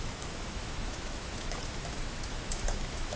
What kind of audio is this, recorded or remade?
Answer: remade